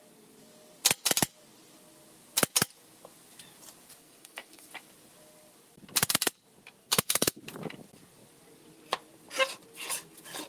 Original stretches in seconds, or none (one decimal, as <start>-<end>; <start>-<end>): 0.0-4.0; 4.7-6.8; 7.4-10.5